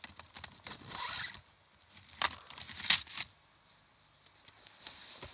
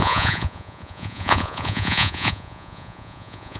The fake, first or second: second